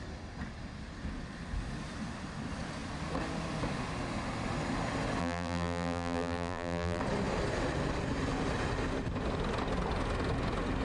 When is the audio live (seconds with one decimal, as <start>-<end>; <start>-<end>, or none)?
0.0-5.2; 7.0-10.8